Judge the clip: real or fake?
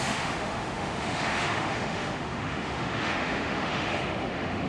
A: fake